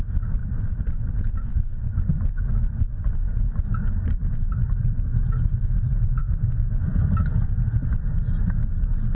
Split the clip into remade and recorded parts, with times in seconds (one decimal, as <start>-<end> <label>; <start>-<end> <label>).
0.0-6.2 recorded; 6.2-6.7 remade; 6.7-9.1 recorded